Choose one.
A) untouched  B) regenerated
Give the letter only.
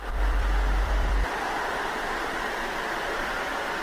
B